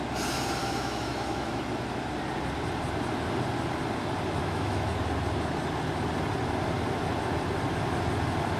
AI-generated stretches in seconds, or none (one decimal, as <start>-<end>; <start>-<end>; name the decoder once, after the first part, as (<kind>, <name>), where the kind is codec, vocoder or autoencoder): 0.6-1.6 (autoencoder, DAC-VAE); 4.4-4.9